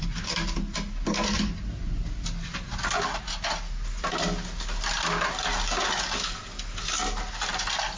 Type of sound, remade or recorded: recorded